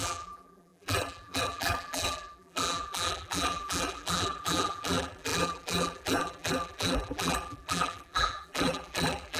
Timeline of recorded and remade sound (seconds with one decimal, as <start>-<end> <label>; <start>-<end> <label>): 0.0-9.4 remade